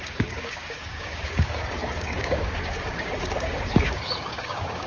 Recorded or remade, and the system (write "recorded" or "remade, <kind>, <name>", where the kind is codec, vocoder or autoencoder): remade, codec, DAC